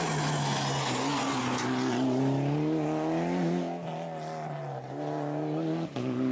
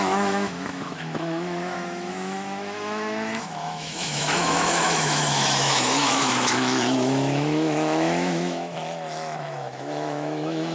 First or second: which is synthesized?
second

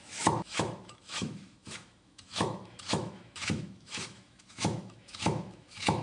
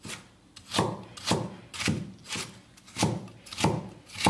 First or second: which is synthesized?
first